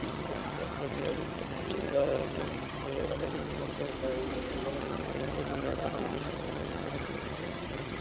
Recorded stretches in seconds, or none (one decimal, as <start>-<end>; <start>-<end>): 3.9-4.8